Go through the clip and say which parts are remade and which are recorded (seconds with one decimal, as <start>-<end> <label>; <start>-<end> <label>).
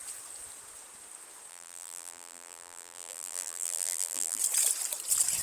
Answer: 0.0-1.5 recorded; 1.5-4.4 remade; 4.4-5.4 recorded